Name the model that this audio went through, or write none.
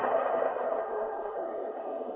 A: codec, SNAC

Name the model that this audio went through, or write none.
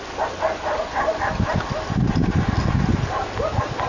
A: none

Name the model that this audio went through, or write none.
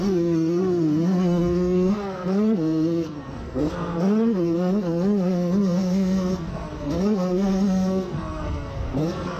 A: codec, SNAC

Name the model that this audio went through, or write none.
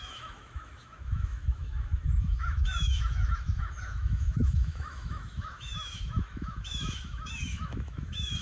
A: autoencoder, DAC-VAE